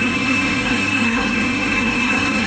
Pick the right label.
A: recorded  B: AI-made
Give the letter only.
B